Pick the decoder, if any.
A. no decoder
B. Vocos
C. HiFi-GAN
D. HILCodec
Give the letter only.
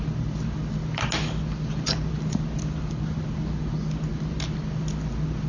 A